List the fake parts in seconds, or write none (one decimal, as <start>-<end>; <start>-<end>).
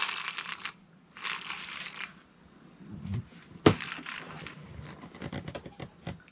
none